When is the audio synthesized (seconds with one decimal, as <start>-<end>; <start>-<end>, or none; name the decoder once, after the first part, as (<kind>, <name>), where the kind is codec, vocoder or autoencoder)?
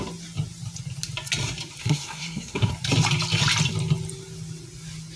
1.8-2.7 (codec, SNAC)